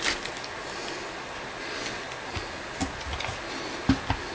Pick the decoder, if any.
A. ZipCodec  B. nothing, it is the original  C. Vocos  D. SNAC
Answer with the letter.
B